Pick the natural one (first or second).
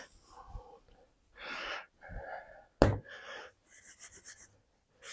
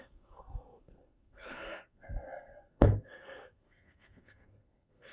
first